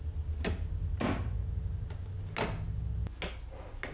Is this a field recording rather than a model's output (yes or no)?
yes